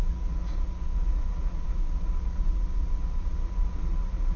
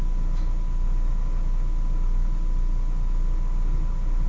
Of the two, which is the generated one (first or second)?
first